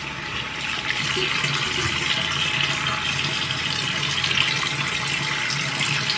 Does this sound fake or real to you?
real